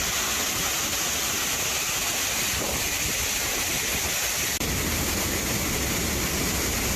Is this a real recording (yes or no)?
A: yes